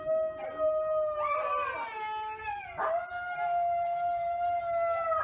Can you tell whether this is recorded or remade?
recorded